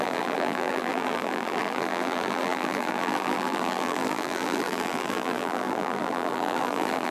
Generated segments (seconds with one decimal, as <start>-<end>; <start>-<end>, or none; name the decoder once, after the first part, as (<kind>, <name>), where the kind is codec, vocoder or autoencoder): 0.0-7.1 (vocoder, BigVGAN v2)